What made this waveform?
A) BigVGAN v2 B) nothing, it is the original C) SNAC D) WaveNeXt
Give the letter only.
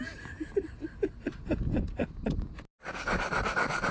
B